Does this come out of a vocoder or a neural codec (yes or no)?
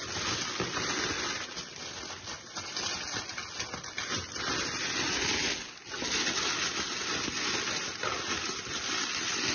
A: no